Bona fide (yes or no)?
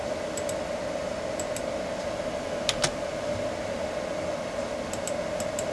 yes